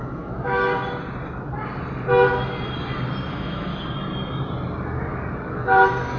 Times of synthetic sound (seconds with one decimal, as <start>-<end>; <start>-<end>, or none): 0.0-0.7; 3.3-3.7; 5.3-6.2